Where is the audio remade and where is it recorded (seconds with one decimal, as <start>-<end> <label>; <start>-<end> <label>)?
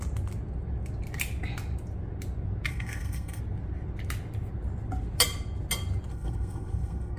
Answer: 0.0-2.7 recorded; 2.7-3.4 remade; 3.4-6.1 recorded; 6.1-7.2 remade